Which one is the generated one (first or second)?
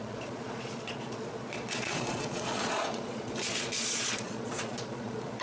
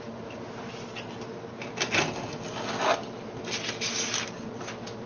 first